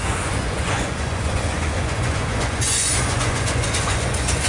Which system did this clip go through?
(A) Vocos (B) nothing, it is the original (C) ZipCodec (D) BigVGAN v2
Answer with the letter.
A